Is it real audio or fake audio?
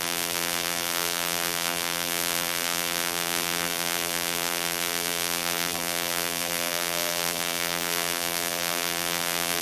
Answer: fake